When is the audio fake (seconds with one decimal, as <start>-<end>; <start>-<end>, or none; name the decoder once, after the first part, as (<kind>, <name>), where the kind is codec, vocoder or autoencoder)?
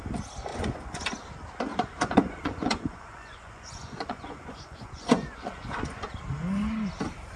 0.5-1.0 (vocoder, Vocos); 1.7-6.1